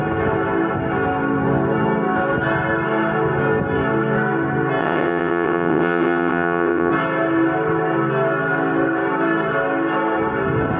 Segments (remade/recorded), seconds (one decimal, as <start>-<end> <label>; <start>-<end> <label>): 0.0-4.8 recorded; 4.8-6.9 remade; 6.9-10.8 recorded